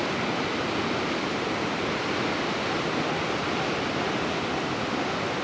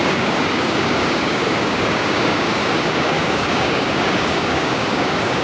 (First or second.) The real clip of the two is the first